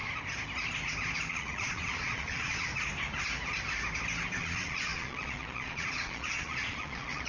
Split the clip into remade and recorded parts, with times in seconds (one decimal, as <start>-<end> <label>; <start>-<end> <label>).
0.0-1.3 recorded; 1.3-2.7 remade; 2.7-4.4 recorded; 4.4-7.3 remade